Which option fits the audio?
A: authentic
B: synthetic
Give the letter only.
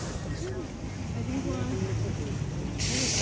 A